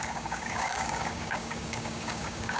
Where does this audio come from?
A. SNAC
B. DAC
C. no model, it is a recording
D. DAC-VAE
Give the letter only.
B